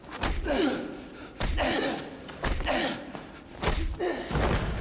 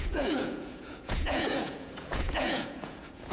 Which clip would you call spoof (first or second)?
second